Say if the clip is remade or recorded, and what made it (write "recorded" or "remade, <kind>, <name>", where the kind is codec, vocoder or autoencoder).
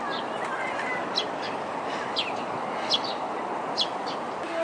recorded